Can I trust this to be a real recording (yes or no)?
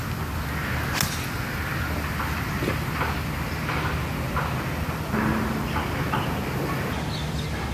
yes